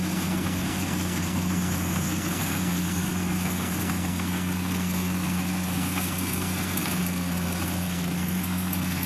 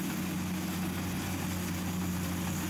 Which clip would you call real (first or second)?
second